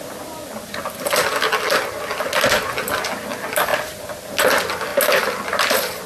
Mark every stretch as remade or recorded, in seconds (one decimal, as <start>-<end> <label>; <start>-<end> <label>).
0.0-6.1 recorded